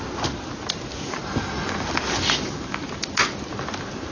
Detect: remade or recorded recorded